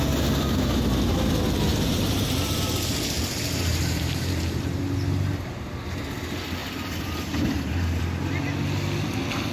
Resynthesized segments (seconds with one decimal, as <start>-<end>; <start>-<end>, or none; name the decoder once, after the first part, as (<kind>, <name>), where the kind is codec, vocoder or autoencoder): 1.7-2.6 (vocoder, BigVGAN v2); 3.7-4.6; 6.6-8.0